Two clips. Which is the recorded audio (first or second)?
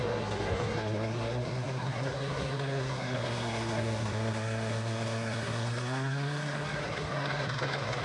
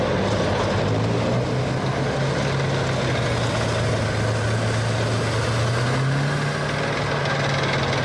second